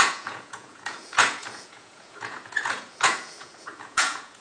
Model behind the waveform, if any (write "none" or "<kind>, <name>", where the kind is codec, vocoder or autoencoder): vocoder, Vocos